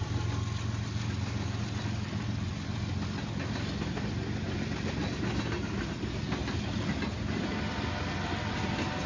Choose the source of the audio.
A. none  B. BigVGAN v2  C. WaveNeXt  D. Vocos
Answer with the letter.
A